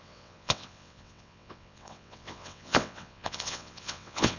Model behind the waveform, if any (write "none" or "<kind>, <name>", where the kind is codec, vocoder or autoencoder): vocoder, WaveNeXt